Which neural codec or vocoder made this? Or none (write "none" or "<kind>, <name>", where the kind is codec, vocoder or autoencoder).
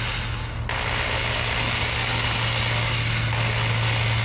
none